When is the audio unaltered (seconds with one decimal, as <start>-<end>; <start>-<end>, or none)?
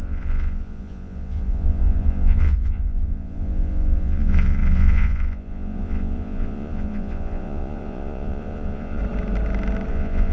9.0-9.9